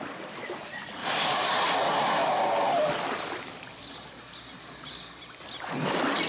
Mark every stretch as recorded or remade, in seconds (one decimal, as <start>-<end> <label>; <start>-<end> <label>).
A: 0.0-6.3 recorded